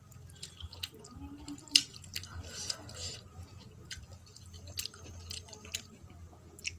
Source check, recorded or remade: recorded